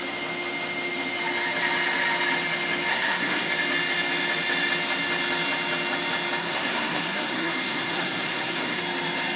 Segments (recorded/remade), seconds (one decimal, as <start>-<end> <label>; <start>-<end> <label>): 0.0-2.9 recorded; 2.9-3.5 remade; 3.5-6.4 recorded; 6.4-8.8 remade; 8.8-9.4 recorded

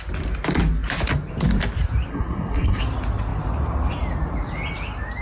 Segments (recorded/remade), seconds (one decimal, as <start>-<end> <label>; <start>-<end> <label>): 0.0-2.1 recorded; 2.1-2.8 remade; 2.8-5.2 recorded

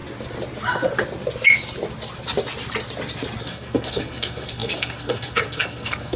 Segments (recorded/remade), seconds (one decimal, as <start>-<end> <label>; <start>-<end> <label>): 0.0-3.4 recorded; 3.4-6.2 remade

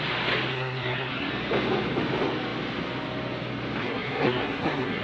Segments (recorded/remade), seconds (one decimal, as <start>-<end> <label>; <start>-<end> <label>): 0.0-0.5 recorded; 0.5-1.3 remade; 1.3-3.8 recorded; 3.8-5.0 remade